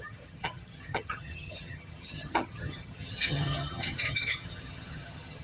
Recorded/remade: remade